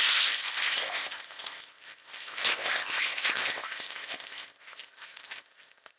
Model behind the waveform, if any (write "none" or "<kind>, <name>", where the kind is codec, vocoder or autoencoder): codec, ZipCodec